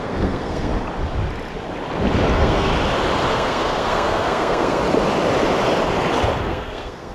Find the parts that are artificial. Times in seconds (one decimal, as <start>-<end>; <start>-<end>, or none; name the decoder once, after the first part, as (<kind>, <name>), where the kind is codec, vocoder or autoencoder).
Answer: 0.0-0.7 (codec, SNAC); 2.3-2.7; 3.3-4.8; 6.4-7.1